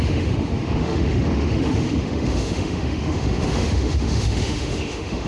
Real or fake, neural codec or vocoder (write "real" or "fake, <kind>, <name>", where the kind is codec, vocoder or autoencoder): fake, autoencoder, DAC-VAE